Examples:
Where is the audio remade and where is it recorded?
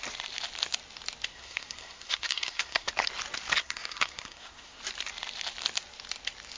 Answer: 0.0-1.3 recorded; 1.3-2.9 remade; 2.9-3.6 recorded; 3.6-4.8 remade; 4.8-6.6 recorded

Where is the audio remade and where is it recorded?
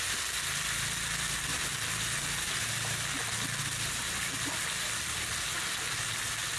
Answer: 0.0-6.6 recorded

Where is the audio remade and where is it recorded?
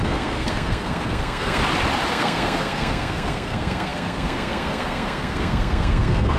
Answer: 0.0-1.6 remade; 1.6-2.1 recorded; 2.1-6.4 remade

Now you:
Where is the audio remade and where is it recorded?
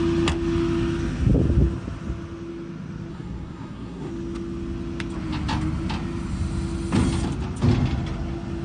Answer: 0.0-3.1 recorded; 3.1-4.1 remade; 4.1-8.6 recorded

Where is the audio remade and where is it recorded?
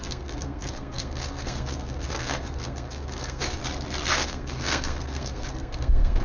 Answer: 0.0-3.6 remade; 3.6-4.1 recorded; 4.1-6.2 remade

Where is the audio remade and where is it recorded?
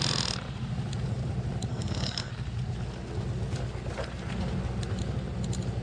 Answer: 0.0-1.7 recorded; 1.7-2.3 remade; 2.3-5.8 recorded